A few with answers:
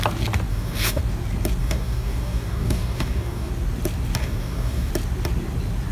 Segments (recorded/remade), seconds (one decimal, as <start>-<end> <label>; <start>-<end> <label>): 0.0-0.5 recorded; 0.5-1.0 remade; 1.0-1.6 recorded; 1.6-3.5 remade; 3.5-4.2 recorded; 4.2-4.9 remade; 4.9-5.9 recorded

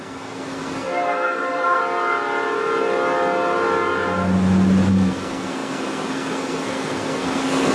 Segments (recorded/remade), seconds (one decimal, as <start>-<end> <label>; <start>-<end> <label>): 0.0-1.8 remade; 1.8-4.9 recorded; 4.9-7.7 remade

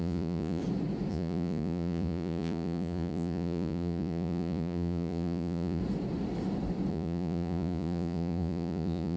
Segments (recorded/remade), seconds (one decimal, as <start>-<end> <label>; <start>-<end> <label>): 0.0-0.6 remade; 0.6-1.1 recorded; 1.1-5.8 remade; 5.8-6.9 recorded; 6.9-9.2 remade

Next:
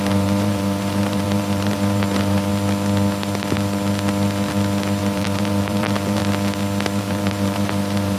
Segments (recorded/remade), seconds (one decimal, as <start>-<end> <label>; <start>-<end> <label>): 0.0-2.5 remade; 2.5-5.0 recorded; 5.0-6.2 remade; 6.2-7.0 recorded; 7.0-8.2 remade

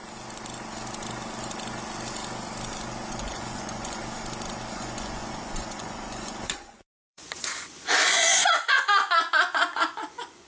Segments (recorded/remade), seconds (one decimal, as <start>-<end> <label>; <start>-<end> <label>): 0.0-3.1 recorded; 3.1-4.0 remade; 4.0-4.7 recorded; 4.7-10.5 remade

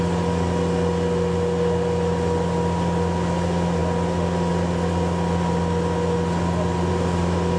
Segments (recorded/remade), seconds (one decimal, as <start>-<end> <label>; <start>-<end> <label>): 0.0-7.6 recorded

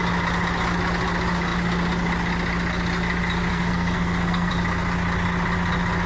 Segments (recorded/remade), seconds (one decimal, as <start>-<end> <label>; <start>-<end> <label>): 0.0-3.5 recorded; 3.5-4.5 remade; 4.5-6.1 recorded